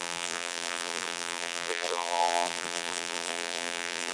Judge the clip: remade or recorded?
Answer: remade